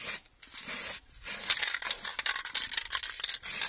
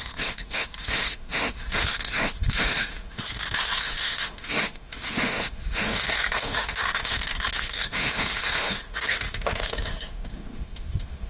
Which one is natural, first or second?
first